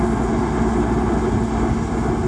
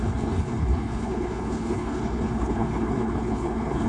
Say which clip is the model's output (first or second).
second